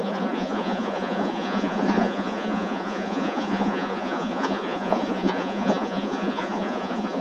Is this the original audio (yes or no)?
no